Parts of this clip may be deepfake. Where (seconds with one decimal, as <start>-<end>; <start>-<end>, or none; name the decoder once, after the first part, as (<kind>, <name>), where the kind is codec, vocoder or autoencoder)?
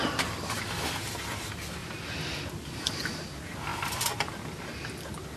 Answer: 1.8-2.9 (vocoder, BigVGAN v2); 3.7-4.4